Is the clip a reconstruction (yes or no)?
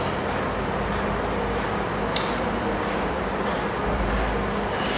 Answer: no